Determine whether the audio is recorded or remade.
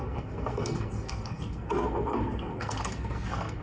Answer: remade